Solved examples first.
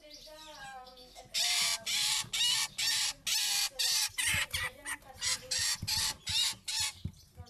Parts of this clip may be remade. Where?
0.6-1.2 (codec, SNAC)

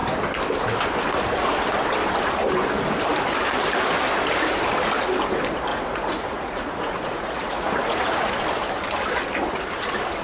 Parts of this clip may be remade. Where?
5.7-8.3 (vocoder, Vocos)

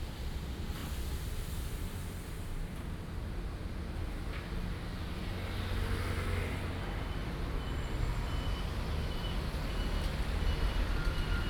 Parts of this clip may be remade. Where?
7.2-7.9 (vocoder, BigVGAN v2)

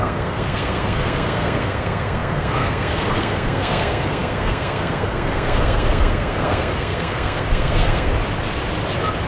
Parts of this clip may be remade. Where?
0.0-8.1 (codec, SNAC)

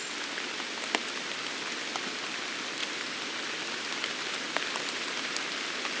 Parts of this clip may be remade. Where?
2.8-3.3 (vocoder, BigVGAN v2)